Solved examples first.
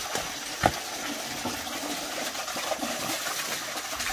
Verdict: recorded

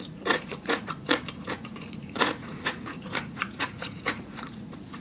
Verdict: remade